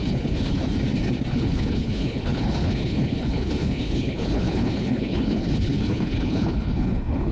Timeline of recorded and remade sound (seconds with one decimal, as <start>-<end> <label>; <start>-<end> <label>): 0.0-0.6 remade; 0.6-1.3 recorded; 1.3-7.3 remade